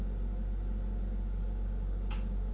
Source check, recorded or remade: recorded